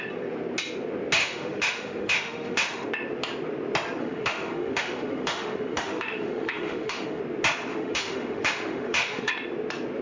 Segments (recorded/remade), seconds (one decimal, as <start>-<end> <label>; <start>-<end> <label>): 0.0-1.2 recorded; 1.2-2.9 remade; 2.9-4.0 recorded; 4.0-7.2 remade; 7.2-7.7 recorded; 7.7-9.3 remade; 9.3-10.0 recorded